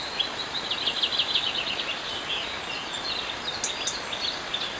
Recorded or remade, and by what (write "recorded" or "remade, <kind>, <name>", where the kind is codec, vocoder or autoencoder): recorded